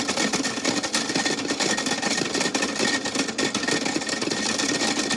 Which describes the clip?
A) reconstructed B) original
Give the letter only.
B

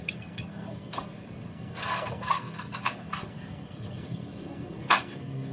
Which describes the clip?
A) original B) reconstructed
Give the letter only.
B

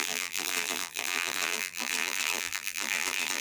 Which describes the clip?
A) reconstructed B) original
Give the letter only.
A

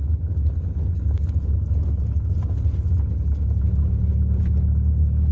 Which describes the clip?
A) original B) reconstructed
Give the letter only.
A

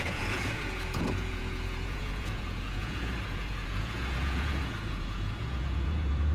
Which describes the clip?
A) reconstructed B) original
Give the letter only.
A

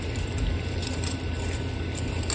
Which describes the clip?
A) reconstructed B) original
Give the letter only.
B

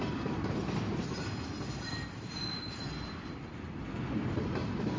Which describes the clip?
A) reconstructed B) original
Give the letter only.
B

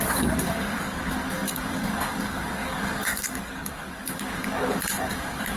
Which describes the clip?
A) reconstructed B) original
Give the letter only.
A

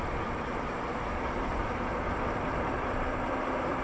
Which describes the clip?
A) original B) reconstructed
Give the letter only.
B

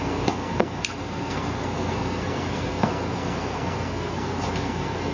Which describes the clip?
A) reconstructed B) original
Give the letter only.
A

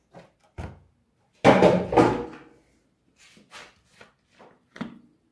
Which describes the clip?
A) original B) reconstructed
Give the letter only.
A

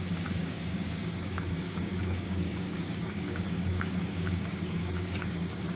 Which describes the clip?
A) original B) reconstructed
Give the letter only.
B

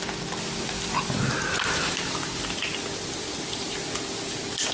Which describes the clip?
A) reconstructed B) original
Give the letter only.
B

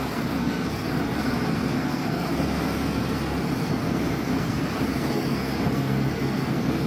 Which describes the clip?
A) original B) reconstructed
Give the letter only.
B